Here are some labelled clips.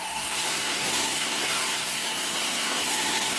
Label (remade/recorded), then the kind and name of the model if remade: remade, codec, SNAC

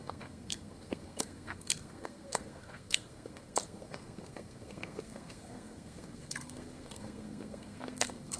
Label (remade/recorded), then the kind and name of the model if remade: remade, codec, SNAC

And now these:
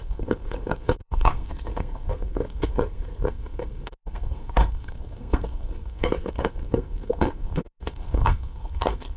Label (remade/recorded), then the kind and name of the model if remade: remade, codec, SNAC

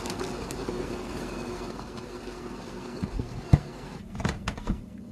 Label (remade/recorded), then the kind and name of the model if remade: remade, codec, SNAC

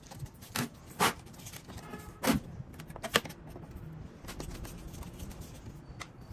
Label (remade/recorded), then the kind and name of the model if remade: recorded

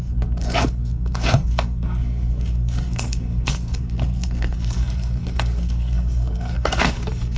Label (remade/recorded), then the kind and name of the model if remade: remade, codec, SNAC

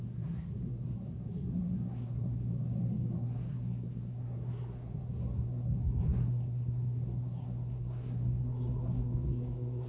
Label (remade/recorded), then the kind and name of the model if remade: remade, codec, SNAC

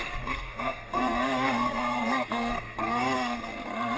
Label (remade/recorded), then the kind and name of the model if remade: remade, codec, SNAC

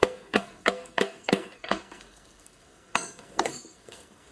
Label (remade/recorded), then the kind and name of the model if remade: remade, codec, SNAC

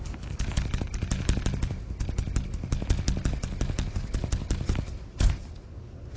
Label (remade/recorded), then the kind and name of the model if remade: recorded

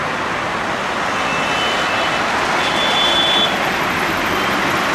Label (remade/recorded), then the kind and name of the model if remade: recorded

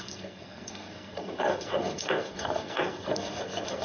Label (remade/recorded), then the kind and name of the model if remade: remade, codec, SNAC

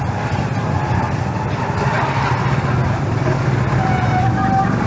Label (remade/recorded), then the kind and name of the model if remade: recorded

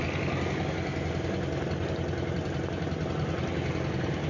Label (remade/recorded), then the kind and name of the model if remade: recorded